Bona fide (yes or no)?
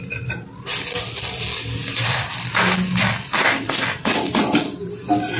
yes